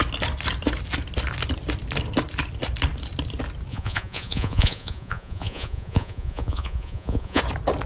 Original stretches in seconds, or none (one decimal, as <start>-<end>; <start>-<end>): 0.0-3.7; 7.4-7.9